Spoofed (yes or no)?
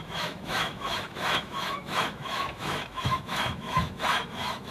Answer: yes